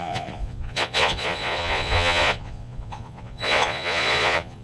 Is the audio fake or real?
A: fake